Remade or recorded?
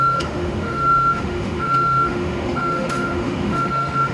remade